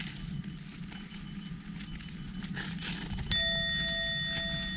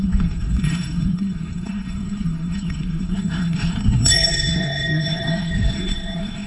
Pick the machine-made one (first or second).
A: second